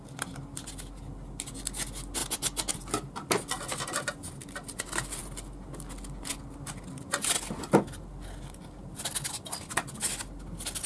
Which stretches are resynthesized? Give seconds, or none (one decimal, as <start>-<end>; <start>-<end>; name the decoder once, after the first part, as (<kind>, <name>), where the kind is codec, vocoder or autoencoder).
none